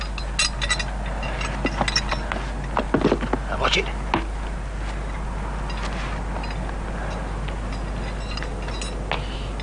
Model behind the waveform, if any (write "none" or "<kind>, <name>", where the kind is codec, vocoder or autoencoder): none